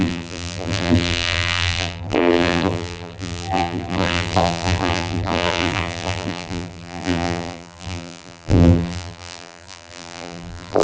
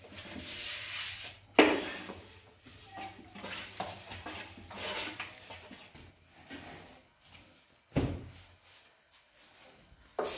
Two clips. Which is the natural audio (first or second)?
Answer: second